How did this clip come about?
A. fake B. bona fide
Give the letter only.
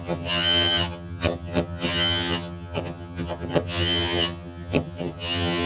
A